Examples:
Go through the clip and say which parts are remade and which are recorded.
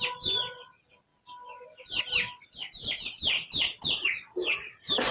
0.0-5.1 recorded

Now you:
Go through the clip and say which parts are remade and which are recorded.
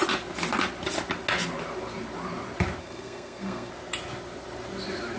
0.0-2.8 recorded; 2.8-3.7 remade; 3.7-5.2 recorded